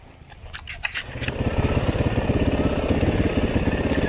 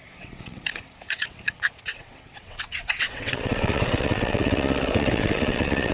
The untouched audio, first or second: first